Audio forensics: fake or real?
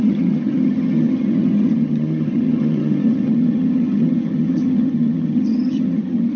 fake